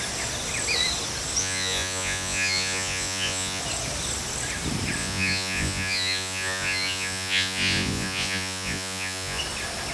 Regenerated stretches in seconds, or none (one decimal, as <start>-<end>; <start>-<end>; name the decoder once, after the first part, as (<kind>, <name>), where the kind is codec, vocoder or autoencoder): 1.4-3.6 (vocoder, Vocos); 5.0-9.4